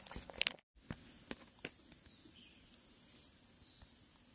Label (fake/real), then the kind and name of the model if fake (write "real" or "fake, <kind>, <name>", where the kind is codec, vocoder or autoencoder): real